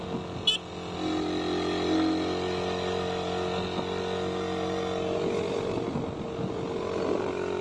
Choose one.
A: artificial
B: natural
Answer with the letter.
B